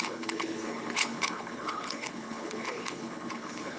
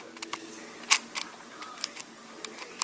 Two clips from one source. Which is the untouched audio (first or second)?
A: second